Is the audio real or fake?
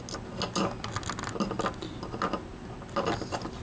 real